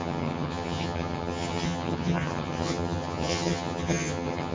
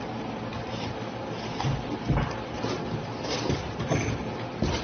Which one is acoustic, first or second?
second